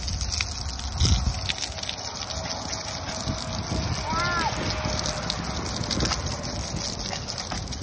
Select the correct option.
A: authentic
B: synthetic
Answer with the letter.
A